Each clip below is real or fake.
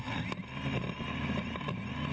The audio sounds real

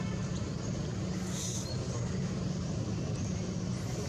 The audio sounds real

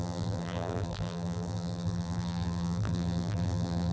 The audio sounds fake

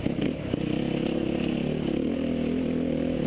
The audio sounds real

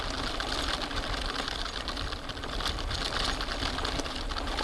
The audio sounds real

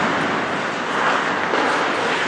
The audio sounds real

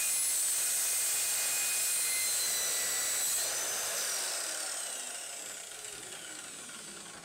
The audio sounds real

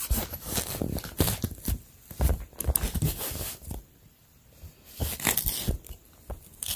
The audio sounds real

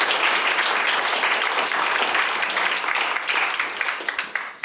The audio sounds real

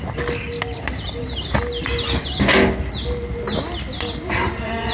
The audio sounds real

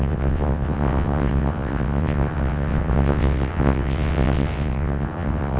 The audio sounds fake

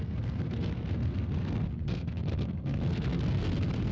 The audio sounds fake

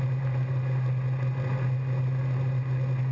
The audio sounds real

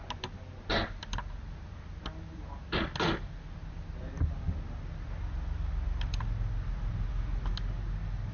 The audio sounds real